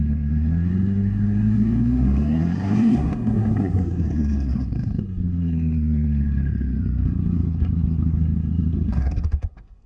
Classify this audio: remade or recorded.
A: remade